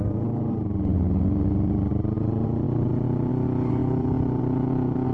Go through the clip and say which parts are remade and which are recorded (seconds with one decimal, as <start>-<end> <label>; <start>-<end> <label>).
0.0-5.1 recorded